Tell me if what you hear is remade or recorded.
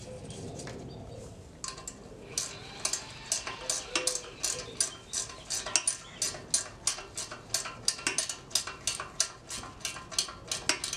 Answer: recorded